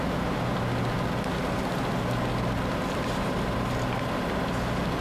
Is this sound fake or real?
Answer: real